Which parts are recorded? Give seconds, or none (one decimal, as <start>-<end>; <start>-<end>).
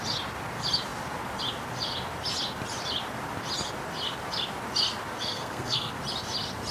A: 0.0-5.2; 6.0-6.7